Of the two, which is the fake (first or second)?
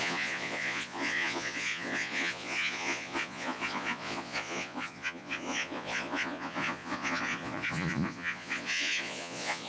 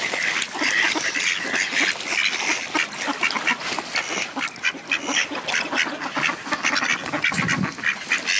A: first